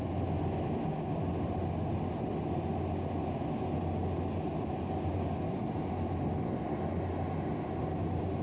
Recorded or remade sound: recorded